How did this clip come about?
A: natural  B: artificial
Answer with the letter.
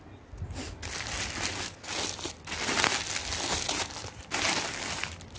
A